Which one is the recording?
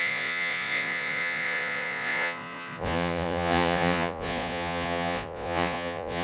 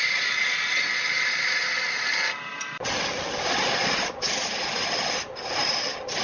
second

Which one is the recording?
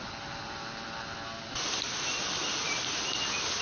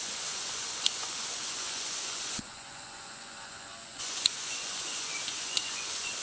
first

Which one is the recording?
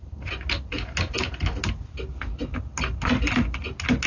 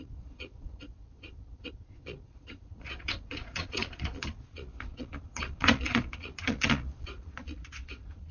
first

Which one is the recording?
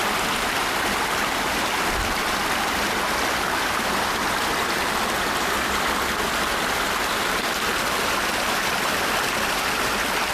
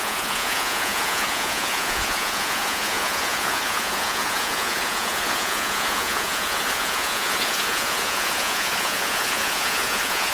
first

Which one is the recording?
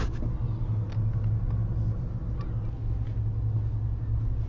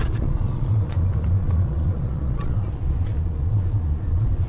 first